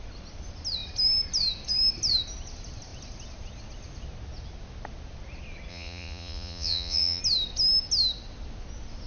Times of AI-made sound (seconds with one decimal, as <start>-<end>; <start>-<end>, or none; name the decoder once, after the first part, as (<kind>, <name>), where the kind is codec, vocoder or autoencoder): 5.7-7.2 (vocoder, Vocos)